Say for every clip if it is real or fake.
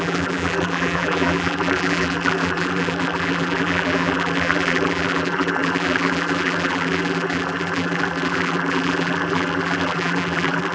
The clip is fake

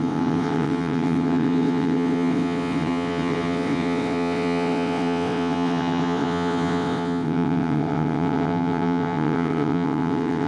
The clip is fake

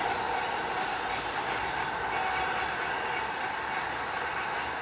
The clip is real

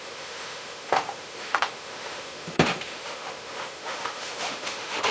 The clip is fake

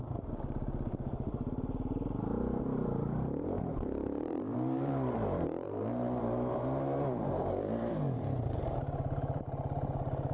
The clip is fake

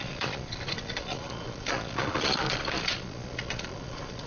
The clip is fake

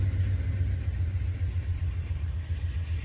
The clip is real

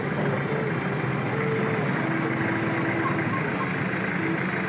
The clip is real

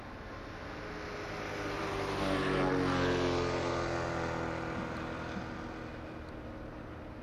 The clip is real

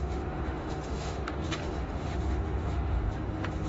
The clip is fake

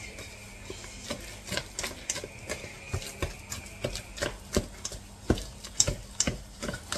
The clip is real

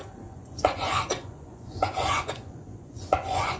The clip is fake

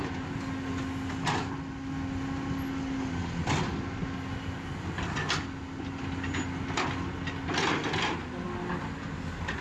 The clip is real